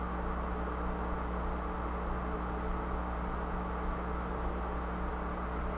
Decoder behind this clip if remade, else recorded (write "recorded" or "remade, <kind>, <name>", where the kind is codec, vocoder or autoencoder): recorded